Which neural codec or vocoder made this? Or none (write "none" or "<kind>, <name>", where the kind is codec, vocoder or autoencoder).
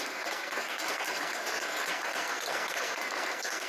codec, SNAC